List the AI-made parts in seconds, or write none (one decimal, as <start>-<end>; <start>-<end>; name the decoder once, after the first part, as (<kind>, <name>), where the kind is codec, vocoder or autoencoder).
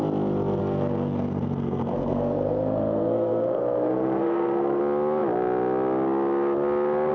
0.6-4.8 (codec, SNAC)